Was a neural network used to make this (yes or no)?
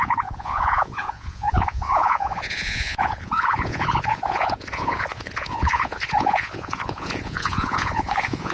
yes